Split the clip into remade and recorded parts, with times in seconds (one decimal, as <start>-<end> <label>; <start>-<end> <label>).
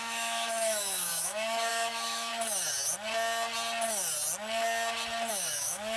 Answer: 0.0-2.3 remade; 2.3-5.3 recorded; 5.3-6.0 remade